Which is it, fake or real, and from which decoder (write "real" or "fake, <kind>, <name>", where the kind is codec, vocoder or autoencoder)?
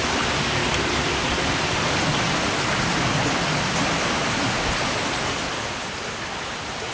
real